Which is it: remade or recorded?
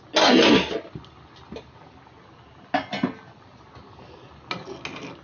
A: recorded